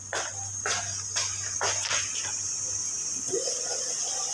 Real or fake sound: real